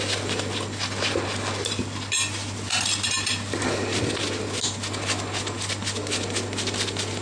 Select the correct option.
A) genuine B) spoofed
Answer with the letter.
A